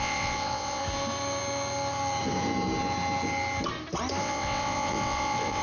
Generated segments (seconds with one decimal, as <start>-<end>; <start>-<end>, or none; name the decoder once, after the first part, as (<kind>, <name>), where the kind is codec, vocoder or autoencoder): 0.0-0.8 (vocoder, WaveNeXt); 4.2-5.6